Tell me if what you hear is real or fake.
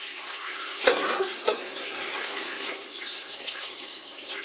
fake